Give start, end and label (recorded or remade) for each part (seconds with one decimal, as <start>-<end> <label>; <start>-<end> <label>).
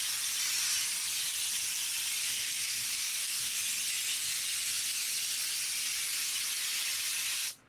0.0-2.3 recorded; 2.3-3.6 remade; 3.6-7.7 recorded